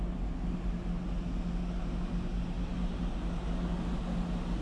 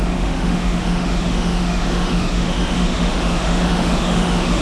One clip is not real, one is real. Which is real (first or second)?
first